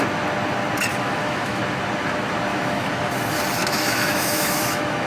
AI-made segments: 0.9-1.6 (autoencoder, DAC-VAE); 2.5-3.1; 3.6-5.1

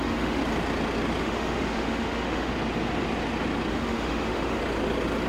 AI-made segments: 0.0-0.4 (autoencoder, DAC-VAE); 1.2-2.5; 3.7-4.6

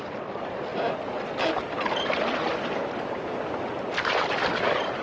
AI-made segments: none

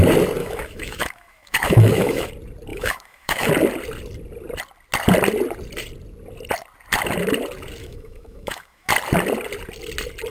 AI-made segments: 0.4-2.3 (autoencoder, DAC-VAE); 2.7-3.5; 7.8-8.9

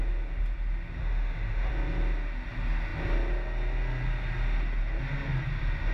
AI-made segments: 1.0-1.7 (autoencoder, DAC-VAE)